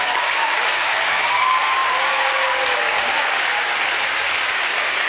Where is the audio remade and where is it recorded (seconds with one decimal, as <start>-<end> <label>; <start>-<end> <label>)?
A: 0.0-5.1 remade